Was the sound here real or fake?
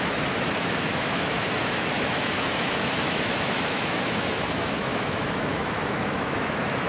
fake